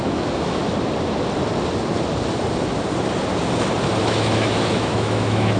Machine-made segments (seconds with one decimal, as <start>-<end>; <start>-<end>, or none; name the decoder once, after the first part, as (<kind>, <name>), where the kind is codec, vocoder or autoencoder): 0.0-0.6 (autoencoder, DAC-VAE); 4.0-5.6